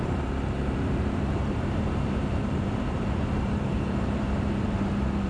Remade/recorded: remade